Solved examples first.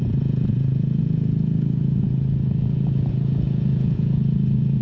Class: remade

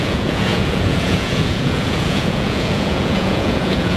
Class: remade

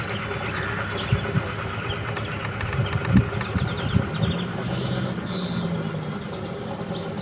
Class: recorded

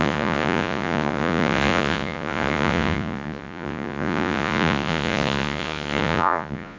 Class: remade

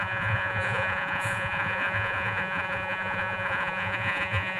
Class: remade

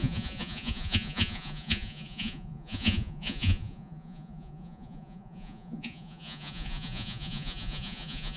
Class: remade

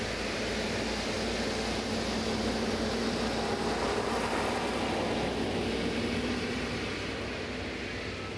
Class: recorded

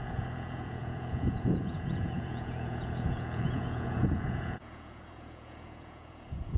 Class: remade